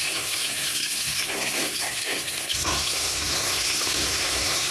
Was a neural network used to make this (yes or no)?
yes